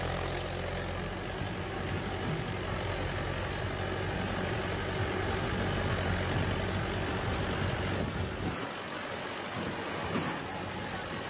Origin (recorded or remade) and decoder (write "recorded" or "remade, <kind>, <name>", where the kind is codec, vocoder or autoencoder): recorded